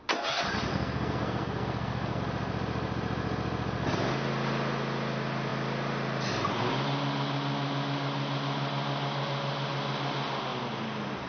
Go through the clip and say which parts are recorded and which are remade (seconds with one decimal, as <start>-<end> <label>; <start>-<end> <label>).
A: 0.0-0.7 recorded; 0.7-2.2 remade; 2.2-11.3 recorded